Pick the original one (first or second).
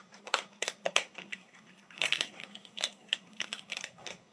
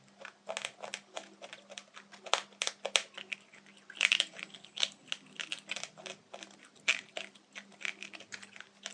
second